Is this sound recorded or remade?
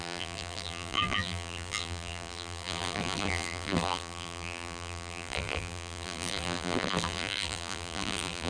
remade